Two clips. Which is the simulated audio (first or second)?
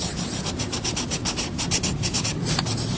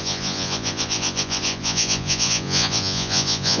second